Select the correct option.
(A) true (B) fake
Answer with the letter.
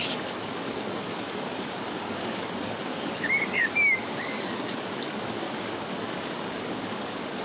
B